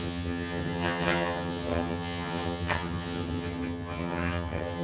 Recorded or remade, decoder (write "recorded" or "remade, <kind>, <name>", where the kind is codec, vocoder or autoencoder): remade, vocoder, HiFi-GAN